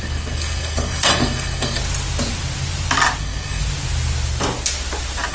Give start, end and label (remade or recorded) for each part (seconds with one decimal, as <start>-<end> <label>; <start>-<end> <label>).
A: 0.0-1.8 remade; 1.8-3.2 recorded; 3.2-3.6 remade; 3.6-5.3 recorded